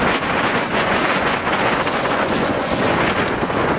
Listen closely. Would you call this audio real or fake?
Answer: fake